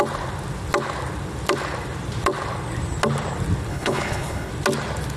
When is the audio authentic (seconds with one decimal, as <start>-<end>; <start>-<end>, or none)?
0.0-3.7; 4.5-5.2